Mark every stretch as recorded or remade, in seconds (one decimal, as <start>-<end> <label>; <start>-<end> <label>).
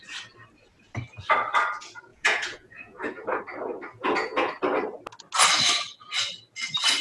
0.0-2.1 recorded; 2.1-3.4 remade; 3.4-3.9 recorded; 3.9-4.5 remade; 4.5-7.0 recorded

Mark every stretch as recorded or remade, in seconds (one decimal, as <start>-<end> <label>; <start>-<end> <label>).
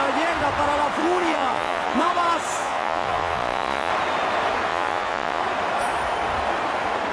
0.0-1.0 recorded; 1.0-2.1 remade; 2.1-2.6 recorded; 2.6-3.9 remade; 3.9-4.7 recorded; 4.7-5.4 remade; 5.4-7.1 recorded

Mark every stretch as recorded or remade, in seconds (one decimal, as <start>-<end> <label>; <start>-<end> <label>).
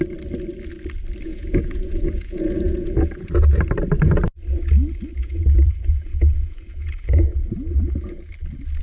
0.0-1.3 recorded; 1.3-3.3 remade; 3.3-5.2 recorded; 5.2-8.3 remade; 8.3-8.8 recorded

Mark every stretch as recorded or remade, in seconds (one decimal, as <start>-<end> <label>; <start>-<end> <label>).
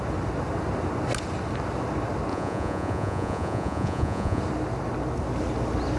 0.0-2.3 recorded; 2.3-4.4 remade; 4.4-6.0 recorded